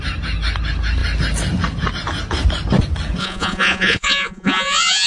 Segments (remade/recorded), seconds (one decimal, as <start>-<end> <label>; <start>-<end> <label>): 0.0-3.2 recorded; 3.2-5.1 remade